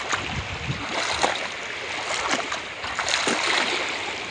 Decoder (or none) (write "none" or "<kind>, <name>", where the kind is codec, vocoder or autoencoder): none